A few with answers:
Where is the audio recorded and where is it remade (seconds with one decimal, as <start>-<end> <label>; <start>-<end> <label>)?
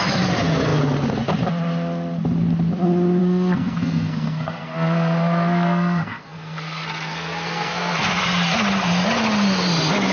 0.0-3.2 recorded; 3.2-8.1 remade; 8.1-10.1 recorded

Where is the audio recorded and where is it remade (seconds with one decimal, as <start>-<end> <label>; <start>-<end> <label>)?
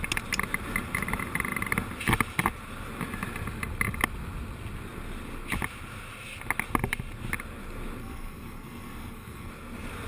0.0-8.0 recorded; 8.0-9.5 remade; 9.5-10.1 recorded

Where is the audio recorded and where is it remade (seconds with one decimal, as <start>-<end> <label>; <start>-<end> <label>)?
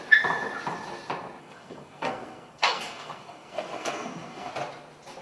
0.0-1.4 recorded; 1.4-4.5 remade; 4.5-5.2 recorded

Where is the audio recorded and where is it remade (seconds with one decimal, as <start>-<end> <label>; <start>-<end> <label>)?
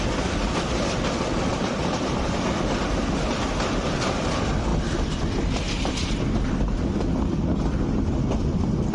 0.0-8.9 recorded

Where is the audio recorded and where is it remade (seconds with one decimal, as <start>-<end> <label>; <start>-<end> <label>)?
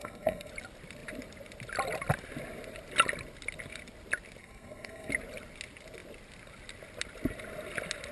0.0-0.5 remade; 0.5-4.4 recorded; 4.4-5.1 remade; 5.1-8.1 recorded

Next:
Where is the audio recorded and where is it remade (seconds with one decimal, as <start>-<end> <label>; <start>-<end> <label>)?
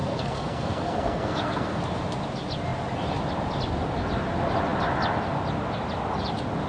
0.0-1.8 remade; 1.8-6.7 recorded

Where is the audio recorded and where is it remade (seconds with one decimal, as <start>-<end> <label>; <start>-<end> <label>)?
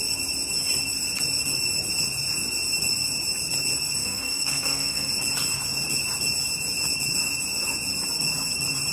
0.0-4.0 recorded; 4.0-5.1 remade; 5.1-8.9 recorded